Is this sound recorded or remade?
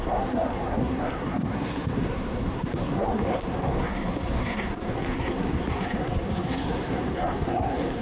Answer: remade